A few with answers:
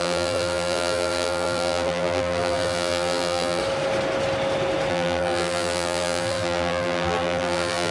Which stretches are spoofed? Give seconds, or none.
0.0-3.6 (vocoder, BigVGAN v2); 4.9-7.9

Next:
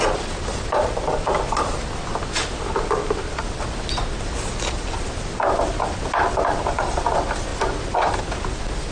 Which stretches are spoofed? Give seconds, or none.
none

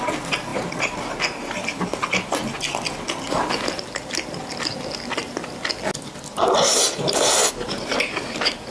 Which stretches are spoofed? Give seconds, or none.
none

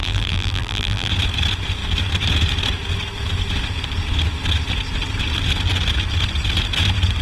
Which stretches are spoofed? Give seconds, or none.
0.0-1.1 (vocoder, BigVGAN v2)

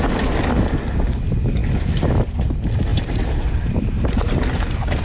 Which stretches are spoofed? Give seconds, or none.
2.9-5.0 (vocoder, BigVGAN v2)

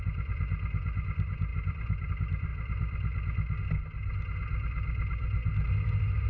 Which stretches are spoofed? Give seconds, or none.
0.0-2.5 (vocoder, BigVGAN v2)